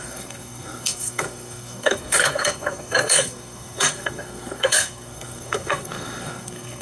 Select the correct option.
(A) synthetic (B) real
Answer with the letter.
A